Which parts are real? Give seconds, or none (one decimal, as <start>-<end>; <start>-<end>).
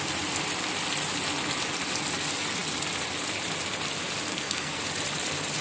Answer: 0.0-4.3; 4.8-5.6